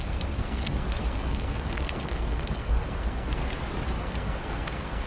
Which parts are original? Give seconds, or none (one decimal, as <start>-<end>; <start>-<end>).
3.4-4.0